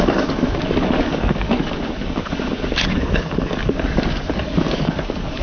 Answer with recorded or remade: remade